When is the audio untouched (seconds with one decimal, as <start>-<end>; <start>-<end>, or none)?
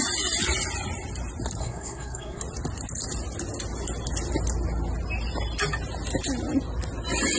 0.0-1.6; 2.4-7.4